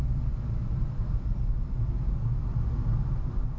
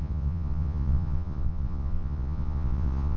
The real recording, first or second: first